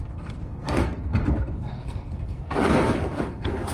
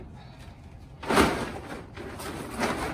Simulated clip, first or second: first